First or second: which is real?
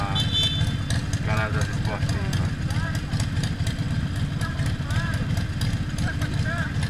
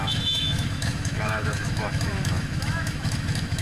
first